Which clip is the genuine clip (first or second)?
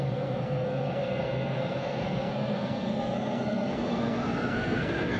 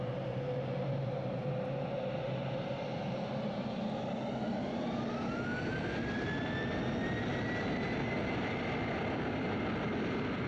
second